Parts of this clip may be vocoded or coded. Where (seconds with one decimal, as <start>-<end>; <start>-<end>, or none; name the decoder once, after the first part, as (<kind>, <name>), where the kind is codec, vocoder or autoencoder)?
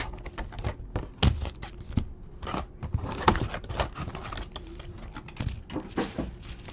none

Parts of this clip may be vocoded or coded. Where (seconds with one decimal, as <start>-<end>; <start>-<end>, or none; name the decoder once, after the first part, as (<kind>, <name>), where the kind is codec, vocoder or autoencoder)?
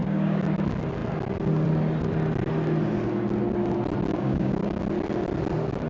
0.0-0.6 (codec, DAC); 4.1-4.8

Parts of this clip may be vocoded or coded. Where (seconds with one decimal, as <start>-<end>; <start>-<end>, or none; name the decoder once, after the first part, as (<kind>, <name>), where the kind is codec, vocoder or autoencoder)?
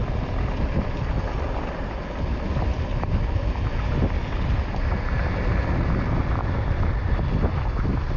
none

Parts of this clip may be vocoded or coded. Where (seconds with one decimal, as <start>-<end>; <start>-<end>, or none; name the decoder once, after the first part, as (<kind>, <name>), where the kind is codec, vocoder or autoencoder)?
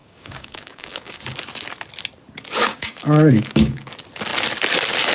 0.0-1.2 (codec, DAC); 2.7-3.9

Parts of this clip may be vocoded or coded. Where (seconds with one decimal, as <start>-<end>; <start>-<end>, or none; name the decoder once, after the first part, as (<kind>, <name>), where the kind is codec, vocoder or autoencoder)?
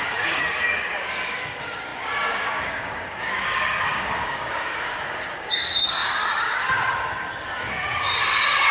0.0-8.7 (codec, DAC)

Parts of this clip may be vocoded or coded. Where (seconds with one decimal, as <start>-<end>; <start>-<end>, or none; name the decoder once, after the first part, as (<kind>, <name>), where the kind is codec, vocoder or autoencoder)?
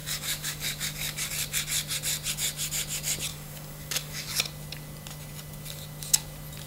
0.0-1.3 (codec, DAC); 3.3-4.3